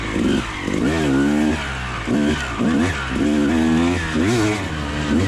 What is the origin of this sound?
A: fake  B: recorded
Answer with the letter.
B